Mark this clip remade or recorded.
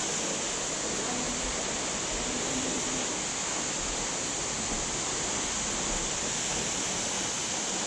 recorded